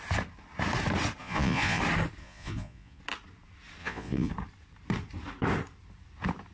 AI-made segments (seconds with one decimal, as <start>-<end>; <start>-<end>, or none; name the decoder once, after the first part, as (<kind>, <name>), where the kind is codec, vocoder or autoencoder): 1.2-1.8 (vocoder, Vocos); 2.2-3.0; 3.8-4.3